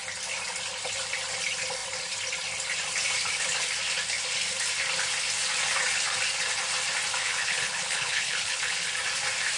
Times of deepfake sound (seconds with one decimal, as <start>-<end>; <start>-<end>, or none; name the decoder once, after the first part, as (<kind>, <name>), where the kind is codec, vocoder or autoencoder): 7.2-8.9 (codec, HILCodec)